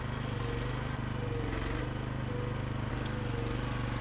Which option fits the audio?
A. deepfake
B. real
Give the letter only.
B